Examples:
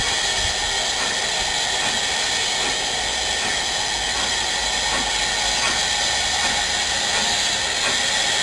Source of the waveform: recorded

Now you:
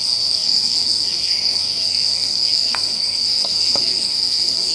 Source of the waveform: remade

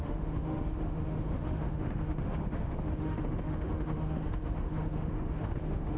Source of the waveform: remade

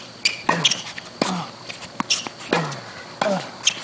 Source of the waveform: recorded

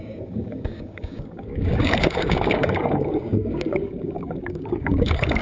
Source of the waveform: remade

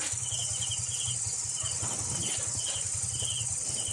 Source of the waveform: recorded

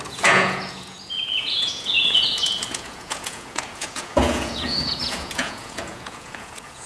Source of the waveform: remade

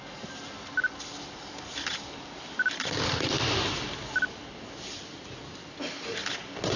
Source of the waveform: recorded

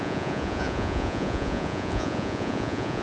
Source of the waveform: remade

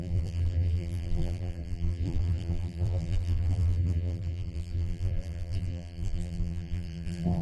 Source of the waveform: remade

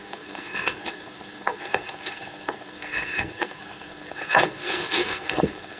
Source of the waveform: remade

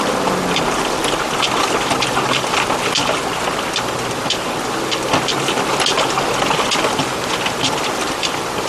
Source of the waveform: remade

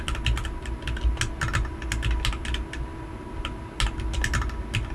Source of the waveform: recorded